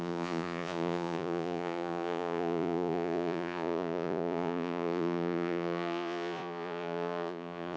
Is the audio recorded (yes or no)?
no